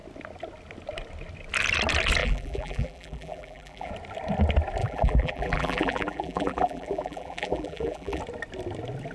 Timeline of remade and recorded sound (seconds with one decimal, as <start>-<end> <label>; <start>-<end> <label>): 0.0-2.2 recorded; 2.2-3.9 remade; 3.9-4.8 recorded; 4.8-8.2 remade; 8.2-9.1 recorded